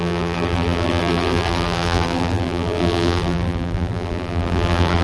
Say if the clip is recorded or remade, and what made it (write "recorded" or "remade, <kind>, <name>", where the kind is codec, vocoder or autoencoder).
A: remade, vocoder, BigVGAN v2